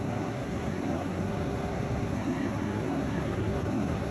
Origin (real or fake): fake